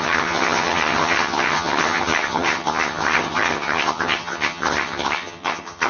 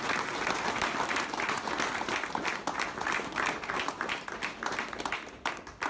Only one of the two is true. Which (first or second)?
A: second